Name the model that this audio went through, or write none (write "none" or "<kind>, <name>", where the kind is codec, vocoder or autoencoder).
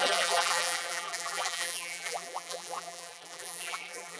vocoder, BigVGAN v2